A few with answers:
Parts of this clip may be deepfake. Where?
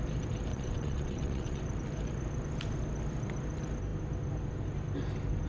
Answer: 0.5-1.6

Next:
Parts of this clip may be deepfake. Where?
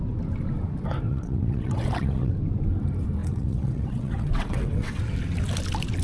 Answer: 1.1-2.3; 3.2-5.0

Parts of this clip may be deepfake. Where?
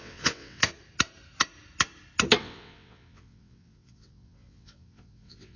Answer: 0.0-0.6; 2.4-5.6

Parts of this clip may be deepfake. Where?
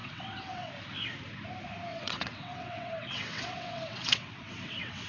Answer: 0.0-0.7; 1.9-5.1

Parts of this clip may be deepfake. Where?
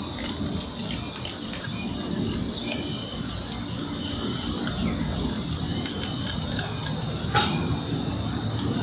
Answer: none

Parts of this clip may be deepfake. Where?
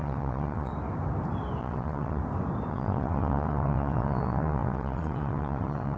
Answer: 0.0-0.7; 1.6-2.2; 2.7-6.0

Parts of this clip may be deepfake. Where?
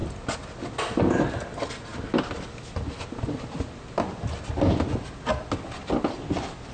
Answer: none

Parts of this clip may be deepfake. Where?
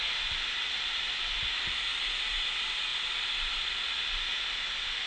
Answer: none